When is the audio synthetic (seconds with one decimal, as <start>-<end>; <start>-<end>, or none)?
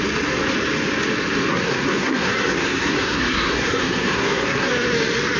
1.5-4.7